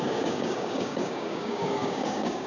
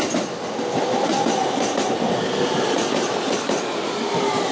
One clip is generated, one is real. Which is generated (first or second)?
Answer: first